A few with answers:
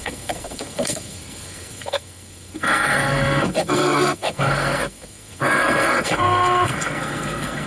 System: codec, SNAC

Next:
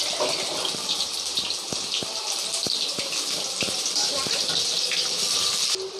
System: none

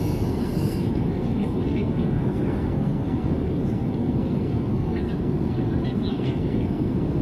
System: codec, SNAC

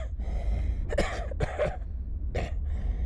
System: none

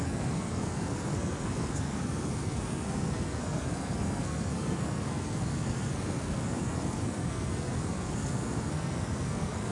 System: codec, SNAC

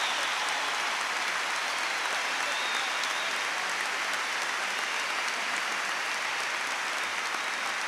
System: none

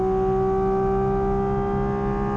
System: none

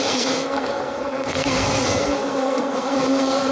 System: codec, SNAC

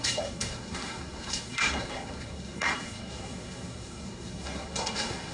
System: codec, SNAC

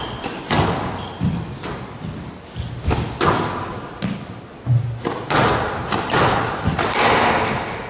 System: none